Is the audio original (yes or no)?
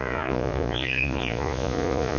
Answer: no